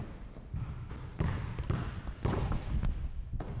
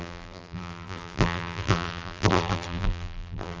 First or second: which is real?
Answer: first